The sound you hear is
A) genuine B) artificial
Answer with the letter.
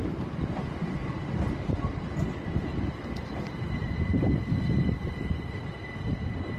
A